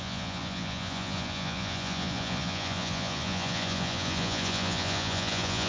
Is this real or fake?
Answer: fake